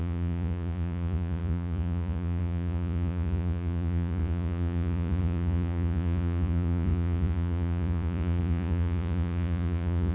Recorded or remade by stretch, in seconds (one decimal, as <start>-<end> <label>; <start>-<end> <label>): 0.0-10.1 remade

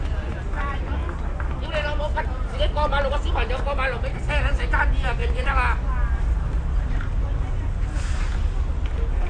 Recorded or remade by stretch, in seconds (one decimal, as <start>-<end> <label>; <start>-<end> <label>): 0.0-9.3 recorded

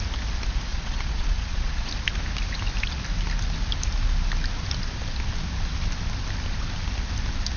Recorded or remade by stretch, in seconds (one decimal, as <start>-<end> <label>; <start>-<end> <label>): 0.0-0.7 recorded; 0.7-1.9 remade; 1.9-7.6 recorded

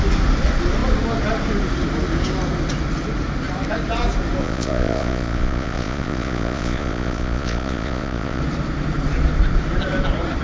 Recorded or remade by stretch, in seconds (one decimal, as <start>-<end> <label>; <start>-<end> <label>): 0.0-4.4 recorded; 4.4-8.4 remade; 8.4-10.4 recorded